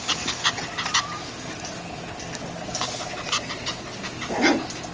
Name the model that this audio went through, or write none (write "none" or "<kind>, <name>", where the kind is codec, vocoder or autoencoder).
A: none